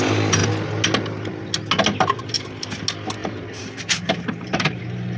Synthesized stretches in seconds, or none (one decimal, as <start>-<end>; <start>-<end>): 3.2-4.8